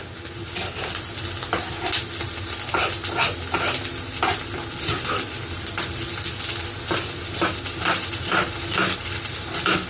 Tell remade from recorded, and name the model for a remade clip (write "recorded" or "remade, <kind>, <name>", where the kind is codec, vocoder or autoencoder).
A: recorded